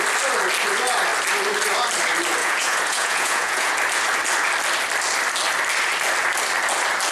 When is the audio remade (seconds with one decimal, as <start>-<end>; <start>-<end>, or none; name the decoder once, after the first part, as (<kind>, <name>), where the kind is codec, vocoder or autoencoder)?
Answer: 2.4-3.7 (vocoder, Vocos)